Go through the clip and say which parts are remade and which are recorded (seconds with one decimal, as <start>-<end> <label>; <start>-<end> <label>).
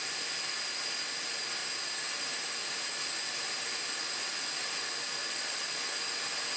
0.0-5.2 recorded; 5.2-5.8 remade; 5.8-6.6 recorded